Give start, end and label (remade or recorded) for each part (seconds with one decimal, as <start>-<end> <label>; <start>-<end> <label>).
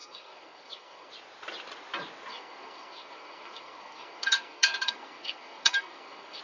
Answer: 0.0-1.1 remade; 1.1-2.3 recorded; 2.3-6.4 remade